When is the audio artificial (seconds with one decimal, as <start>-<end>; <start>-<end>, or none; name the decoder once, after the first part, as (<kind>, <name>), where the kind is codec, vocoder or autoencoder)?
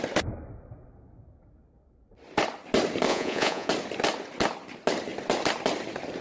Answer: 3.1-3.7 (vocoder, Vocos)